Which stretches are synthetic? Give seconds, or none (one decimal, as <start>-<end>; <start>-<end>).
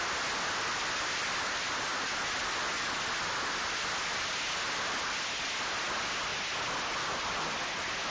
none